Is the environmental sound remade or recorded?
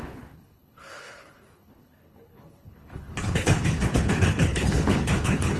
remade